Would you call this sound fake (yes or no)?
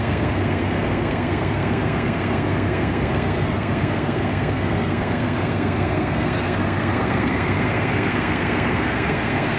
yes